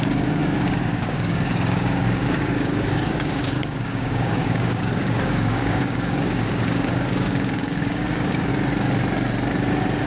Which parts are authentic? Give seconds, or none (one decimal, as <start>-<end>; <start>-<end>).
8.5-10.1